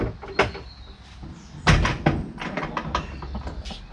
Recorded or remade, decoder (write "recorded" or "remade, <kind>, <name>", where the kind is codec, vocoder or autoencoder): recorded